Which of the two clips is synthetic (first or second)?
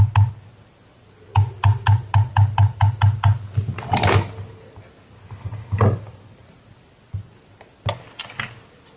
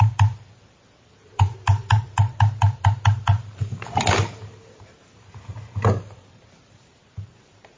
second